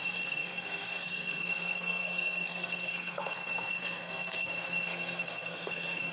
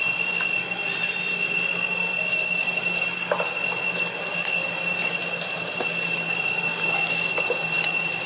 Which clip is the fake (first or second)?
first